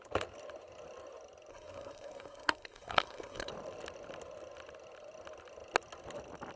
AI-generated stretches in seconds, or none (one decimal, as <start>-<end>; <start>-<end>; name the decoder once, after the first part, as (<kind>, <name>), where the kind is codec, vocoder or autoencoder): 1.5-3.5 (codec, SNAC)